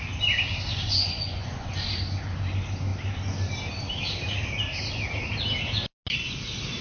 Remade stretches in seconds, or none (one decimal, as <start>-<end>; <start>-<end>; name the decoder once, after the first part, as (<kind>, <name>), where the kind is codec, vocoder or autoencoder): 0.7-1.7 (vocoder, Vocos)